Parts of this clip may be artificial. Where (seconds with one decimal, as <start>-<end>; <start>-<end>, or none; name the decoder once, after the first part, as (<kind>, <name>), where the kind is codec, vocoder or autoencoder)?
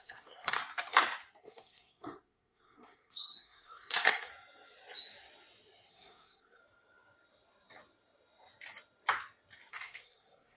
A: 0.0-0.6 (codec, SNAC); 1.4-4.3; 5.9-6.6; 9.7-10.6